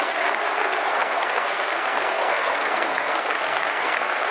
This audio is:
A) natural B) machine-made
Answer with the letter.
B